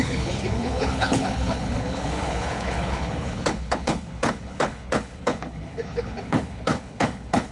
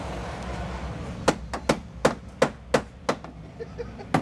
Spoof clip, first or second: first